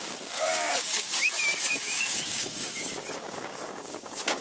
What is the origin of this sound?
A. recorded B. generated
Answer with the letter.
B